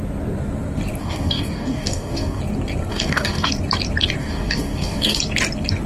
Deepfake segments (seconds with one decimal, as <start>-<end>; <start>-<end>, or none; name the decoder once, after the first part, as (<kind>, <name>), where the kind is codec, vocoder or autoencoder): 1.0-2.4 (codec, DAC); 2.9-3.5; 4.2-5.2